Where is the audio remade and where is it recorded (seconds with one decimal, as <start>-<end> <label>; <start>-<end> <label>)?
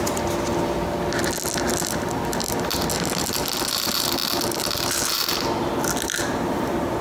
0.0-7.0 recorded